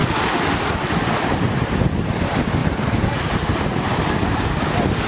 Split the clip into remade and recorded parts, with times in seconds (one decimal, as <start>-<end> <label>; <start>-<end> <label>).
0.0-5.1 recorded